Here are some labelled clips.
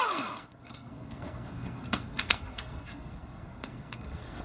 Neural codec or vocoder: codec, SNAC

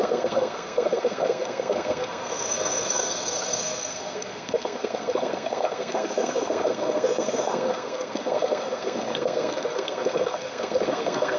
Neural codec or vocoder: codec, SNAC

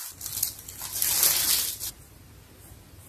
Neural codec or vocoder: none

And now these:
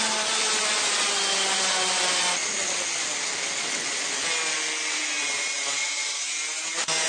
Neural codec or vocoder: none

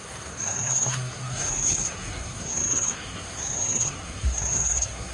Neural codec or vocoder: codec, SNAC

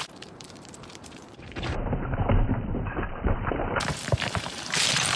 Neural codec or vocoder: vocoder, BigVGAN v2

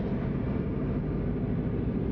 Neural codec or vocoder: none